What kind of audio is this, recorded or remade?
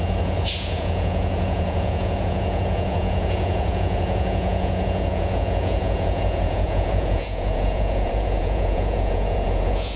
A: remade